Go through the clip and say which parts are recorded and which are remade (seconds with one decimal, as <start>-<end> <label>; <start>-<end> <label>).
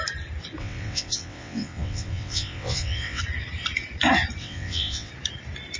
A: 0.0-0.6 recorded; 0.6-3.2 remade; 3.2-4.4 recorded; 4.4-5.1 remade; 5.1-5.8 recorded